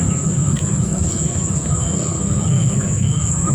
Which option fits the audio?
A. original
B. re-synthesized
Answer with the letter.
B